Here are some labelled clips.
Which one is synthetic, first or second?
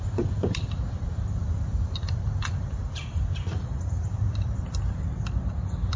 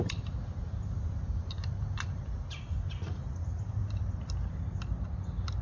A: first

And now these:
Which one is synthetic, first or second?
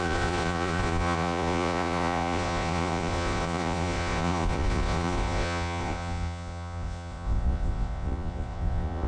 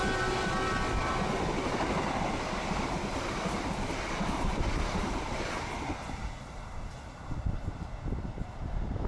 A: first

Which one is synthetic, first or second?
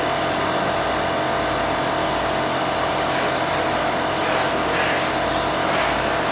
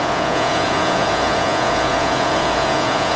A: second